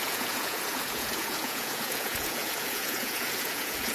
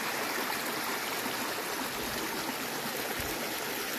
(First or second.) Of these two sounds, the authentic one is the second